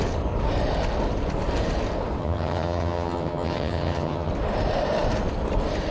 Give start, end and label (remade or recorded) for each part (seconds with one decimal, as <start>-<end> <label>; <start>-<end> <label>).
0.0-2.2 recorded; 2.2-4.3 remade; 4.3-5.9 recorded